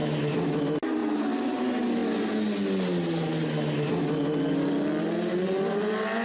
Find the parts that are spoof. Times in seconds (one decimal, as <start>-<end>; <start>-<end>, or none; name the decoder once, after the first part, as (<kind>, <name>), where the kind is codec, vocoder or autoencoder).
none